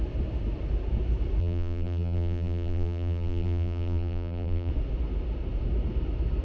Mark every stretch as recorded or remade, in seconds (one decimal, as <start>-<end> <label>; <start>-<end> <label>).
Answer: 0.0-1.4 recorded; 1.4-4.7 remade; 4.7-6.4 recorded